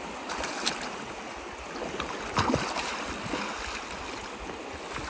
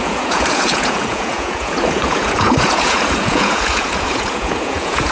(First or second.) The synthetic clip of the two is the second